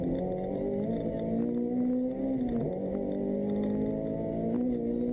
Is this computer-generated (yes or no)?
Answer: no